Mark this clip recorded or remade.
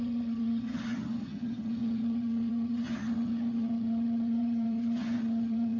remade